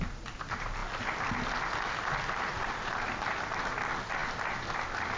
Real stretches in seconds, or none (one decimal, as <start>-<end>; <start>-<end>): 0.0-5.2